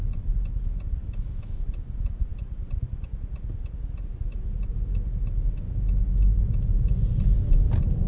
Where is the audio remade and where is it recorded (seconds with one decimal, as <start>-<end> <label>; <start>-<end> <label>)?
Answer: 0.0-1.0 recorded; 1.0-1.6 remade; 1.6-8.1 recorded